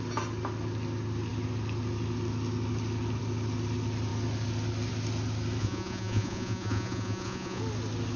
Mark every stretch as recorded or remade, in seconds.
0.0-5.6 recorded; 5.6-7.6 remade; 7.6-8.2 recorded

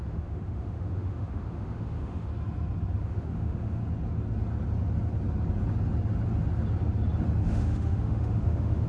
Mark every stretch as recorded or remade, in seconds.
0.0-2.3 remade; 2.3-3.0 recorded; 3.0-3.8 remade; 3.8-7.4 recorded; 7.4-8.9 remade

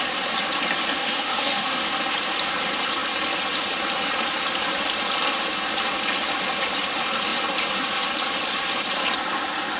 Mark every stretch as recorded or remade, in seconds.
0.0-1.0 recorded; 1.0-1.8 remade; 1.8-9.8 recorded